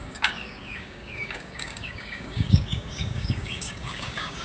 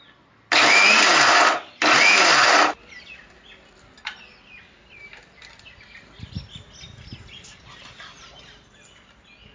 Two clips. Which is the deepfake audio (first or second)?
first